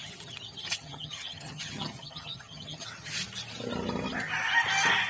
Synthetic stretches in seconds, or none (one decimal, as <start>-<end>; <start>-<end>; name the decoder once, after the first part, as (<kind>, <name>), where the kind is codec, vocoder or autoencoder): 0.0-3.1 (vocoder, HiFi-GAN)